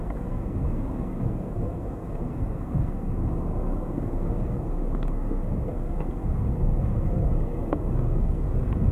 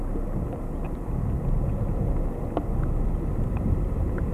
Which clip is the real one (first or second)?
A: second